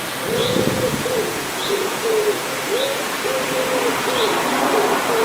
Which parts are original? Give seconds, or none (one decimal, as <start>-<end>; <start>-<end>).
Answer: 0.0-0.4; 2.6-5.2

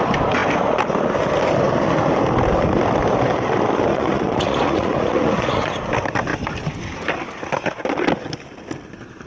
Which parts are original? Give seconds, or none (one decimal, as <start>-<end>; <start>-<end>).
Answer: 0.0-3.9; 5.8-9.3

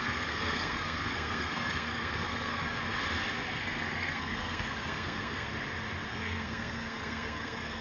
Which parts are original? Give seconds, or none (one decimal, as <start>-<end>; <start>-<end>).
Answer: 2.8-3.6; 5.5-6.1

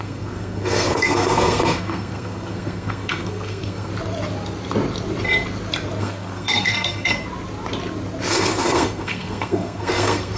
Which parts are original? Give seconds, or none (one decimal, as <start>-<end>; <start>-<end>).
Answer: 3.9-6.0; 7.2-8.3

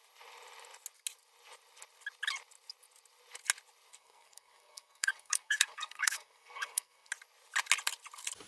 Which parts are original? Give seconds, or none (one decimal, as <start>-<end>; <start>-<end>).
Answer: 0.0-3.9; 7.1-8.5